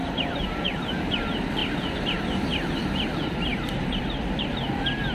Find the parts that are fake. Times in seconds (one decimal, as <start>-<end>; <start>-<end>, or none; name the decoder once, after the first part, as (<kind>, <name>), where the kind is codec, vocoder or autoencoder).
0.0-1.2 (vocoder, BigVGAN v2); 3.5-4.0